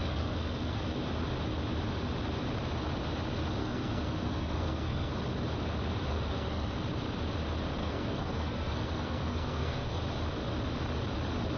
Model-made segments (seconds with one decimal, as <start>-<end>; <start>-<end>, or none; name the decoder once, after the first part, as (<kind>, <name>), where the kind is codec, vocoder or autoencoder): 0.0-0.8 (codec, SNAC); 3.6-5.1; 6.1-6.8; 7.8-10.0